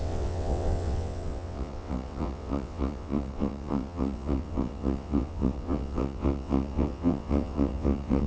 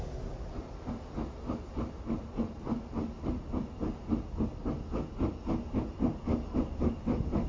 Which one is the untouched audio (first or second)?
second